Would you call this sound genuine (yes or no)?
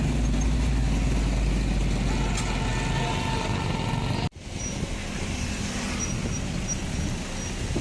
yes